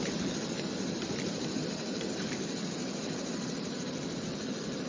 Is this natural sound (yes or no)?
no